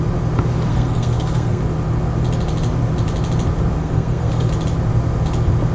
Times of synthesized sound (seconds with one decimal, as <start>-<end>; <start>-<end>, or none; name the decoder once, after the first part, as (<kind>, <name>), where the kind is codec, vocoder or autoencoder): 0.7-1.6 (codec, SNAC); 3.8-4.5

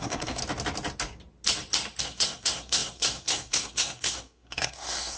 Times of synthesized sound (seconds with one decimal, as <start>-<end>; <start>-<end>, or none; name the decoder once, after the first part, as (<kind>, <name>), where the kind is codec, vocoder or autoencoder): 0.0-0.4 (codec, SNAC); 2.0-5.2

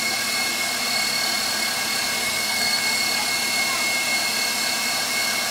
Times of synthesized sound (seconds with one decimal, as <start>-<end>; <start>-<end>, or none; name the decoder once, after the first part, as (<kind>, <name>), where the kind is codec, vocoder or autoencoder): 2.2-2.8 (codec, SNAC)

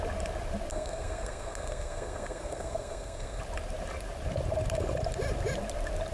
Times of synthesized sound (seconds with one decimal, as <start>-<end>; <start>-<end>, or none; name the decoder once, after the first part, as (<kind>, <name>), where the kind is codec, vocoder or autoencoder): 0.7-3.4 (codec, SNAC)

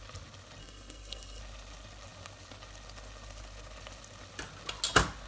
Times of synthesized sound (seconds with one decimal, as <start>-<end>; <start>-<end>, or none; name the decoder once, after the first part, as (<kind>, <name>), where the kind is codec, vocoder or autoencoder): 0.6-1.4 (codec, SNAC)